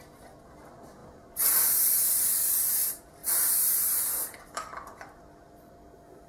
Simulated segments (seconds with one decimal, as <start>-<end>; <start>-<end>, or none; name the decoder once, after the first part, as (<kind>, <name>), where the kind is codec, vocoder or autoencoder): none